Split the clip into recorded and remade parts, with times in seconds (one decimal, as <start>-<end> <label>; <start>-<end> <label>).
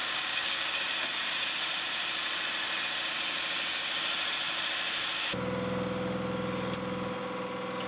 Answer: 0.0-0.8 remade; 0.8-7.9 recorded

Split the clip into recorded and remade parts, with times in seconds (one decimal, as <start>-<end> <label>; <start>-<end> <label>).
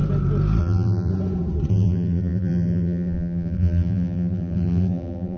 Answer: 0.0-0.6 recorded; 0.6-1.1 remade; 1.1-1.7 recorded; 1.7-5.4 remade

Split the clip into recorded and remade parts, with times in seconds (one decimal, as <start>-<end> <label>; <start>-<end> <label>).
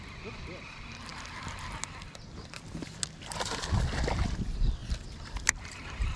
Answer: 0.0-6.2 recorded